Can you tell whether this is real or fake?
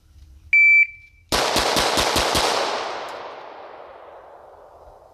real